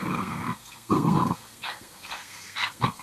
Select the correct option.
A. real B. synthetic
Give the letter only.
B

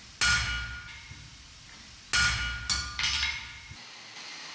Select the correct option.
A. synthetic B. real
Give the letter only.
B